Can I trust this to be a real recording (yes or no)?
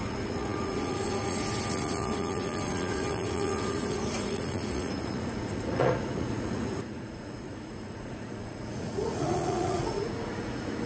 no